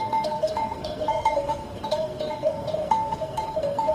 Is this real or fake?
fake